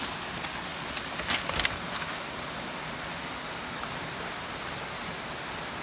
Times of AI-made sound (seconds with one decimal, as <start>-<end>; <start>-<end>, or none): none